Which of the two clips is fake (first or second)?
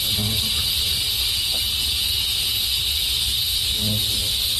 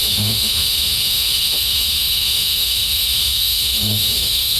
second